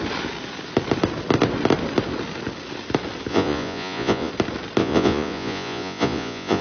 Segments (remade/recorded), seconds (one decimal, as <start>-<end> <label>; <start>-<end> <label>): 0.0-3.3 recorded; 3.3-4.3 remade; 4.3-4.8 recorded; 4.8-6.6 remade